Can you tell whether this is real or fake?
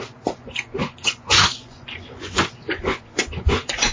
fake